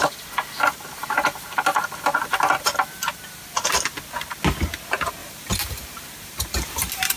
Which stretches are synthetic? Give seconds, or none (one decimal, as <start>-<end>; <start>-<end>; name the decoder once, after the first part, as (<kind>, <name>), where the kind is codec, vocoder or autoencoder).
5.2-7.2 (vocoder, BigVGAN v2)